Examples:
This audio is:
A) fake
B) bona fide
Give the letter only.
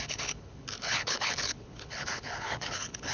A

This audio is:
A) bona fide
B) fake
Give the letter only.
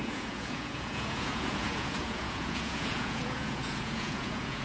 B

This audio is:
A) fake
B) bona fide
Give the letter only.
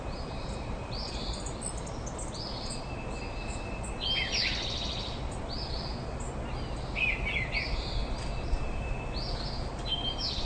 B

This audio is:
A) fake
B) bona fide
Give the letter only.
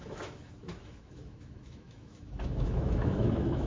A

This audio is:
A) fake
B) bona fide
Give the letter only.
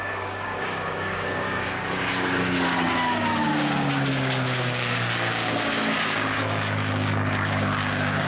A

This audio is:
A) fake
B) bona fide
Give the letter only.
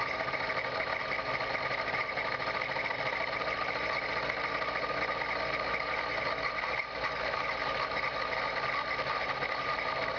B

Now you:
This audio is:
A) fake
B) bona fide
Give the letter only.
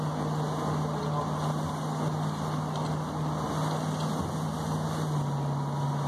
B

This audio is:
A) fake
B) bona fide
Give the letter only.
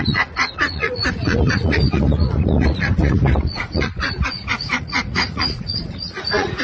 A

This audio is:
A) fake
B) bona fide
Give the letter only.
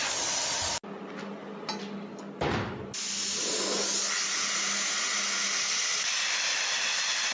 B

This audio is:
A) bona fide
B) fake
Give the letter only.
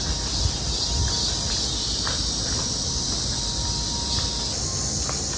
A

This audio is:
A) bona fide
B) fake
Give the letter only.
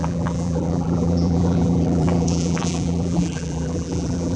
B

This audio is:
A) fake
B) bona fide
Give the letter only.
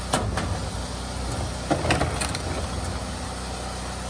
B